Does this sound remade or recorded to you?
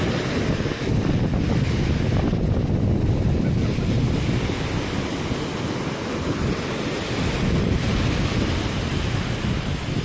recorded